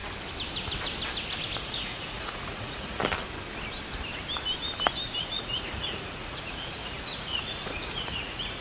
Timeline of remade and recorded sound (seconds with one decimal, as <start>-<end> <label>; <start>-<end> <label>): 0.0-1.6 recorded; 1.6-3.0 remade; 3.0-5.2 recorded; 5.2-8.6 remade